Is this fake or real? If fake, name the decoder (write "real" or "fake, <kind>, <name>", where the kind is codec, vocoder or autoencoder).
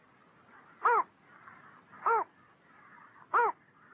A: real